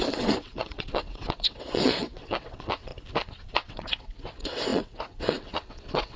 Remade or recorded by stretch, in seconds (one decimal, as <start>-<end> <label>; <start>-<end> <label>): 0.0-2.9 remade; 2.9-3.5 recorded; 3.5-6.2 remade